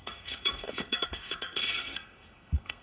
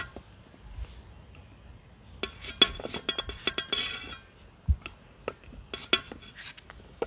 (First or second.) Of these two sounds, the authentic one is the second